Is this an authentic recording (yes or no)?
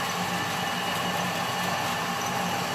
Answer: yes